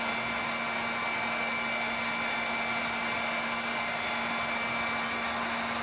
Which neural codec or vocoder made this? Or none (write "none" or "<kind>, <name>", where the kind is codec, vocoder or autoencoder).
none